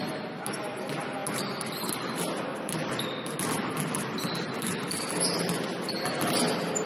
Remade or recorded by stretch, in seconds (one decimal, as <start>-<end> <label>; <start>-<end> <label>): 0.0-6.9 recorded